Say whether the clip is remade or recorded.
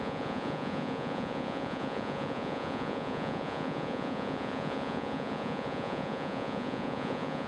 remade